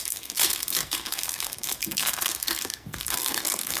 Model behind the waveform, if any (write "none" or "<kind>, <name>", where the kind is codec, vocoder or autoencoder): codec, SNAC